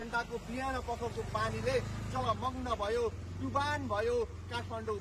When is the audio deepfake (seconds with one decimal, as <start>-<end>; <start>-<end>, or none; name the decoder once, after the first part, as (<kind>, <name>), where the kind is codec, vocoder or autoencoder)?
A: none

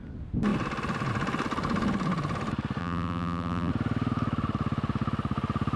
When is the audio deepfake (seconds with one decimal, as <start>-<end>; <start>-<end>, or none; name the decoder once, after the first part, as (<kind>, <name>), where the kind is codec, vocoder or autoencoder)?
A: 2.8-3.7 (vocoder, BigVGAN v2)

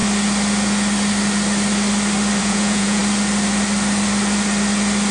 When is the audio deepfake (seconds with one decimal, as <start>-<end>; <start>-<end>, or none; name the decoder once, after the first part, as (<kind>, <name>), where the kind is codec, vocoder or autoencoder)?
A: 2.4-3.0 (vocoder, Vocos)

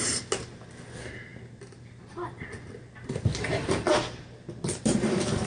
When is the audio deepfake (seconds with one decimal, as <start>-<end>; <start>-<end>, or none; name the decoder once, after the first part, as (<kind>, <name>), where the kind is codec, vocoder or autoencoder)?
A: none

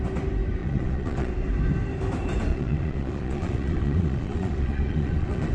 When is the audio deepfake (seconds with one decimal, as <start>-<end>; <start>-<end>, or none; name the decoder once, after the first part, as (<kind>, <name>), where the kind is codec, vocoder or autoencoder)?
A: 0.6-1.3 (vocoder, Vocos); 2.5-5.5

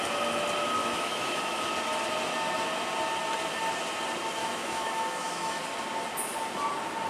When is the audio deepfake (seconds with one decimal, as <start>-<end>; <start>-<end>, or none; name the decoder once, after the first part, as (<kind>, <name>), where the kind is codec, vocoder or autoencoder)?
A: 0.8-1.7 (autoencoder, DAC-VAE); 4.4-5.6

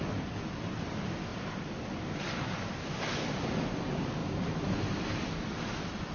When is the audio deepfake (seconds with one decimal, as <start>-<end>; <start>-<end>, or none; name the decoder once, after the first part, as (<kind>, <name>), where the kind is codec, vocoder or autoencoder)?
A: none

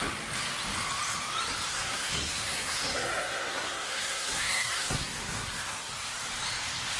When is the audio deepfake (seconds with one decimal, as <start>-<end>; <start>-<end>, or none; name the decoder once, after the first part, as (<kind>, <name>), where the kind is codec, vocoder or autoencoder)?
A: 1.7-5.9 (codec, SNAC)